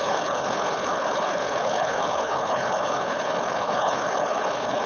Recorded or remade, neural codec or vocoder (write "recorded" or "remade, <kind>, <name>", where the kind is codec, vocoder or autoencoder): remade, codec, HILCodec